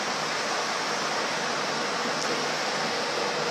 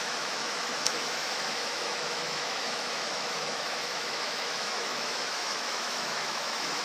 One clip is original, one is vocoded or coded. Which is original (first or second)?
first